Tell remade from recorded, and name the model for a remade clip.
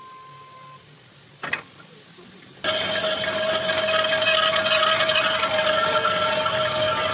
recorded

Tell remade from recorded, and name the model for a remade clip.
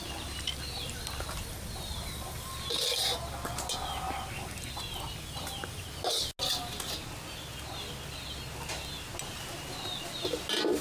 recorded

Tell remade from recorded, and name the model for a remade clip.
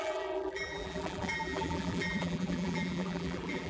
remade, vocoder, BigVGAN v2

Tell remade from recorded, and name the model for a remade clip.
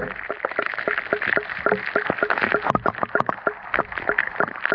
recorded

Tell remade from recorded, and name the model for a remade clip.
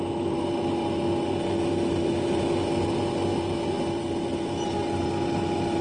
recorded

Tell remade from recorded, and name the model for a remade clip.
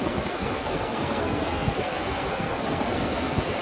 remade, codec, SNAC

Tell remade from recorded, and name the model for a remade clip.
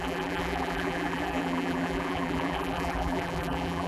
remade, vocoder, BigVGAN v2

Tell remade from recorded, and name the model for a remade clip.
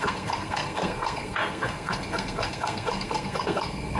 remade, codec, SNAC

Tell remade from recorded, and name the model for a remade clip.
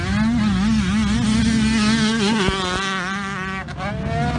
recorded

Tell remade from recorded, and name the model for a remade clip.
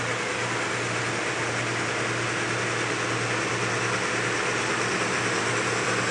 recorded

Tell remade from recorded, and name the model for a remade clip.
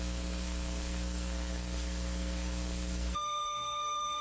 remade, codec, SNAC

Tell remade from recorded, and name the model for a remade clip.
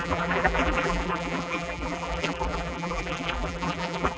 remade, vocoder, BigVGAN v2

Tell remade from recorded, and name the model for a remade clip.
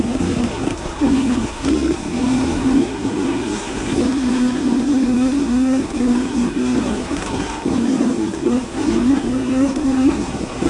remade, codec, SNAC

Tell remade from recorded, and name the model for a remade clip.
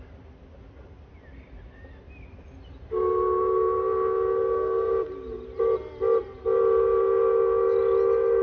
recorded